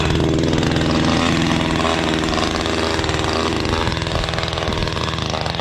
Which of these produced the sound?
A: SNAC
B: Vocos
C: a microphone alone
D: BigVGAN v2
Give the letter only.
C